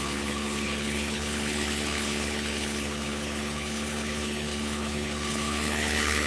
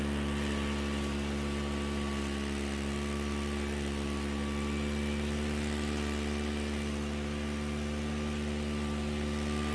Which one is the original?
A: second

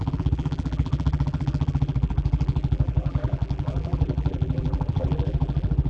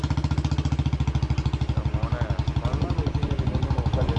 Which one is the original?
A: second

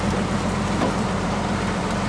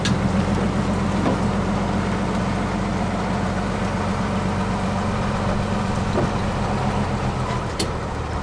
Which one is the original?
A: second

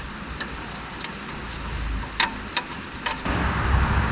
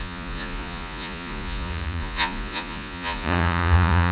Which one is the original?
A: first